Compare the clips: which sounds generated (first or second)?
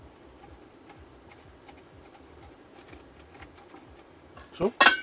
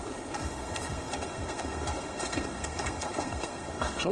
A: second